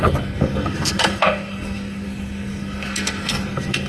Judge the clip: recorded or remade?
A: remade